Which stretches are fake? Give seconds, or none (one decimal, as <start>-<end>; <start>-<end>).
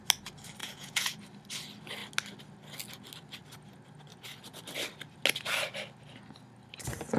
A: 0.6-1.2